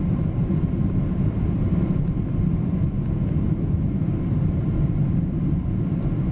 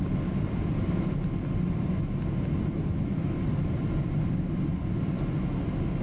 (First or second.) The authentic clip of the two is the second